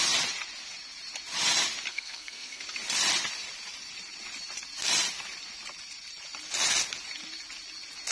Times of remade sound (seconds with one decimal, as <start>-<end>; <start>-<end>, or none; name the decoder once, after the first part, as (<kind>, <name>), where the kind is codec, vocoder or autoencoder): 1.9-2.6 (codec, SNAC)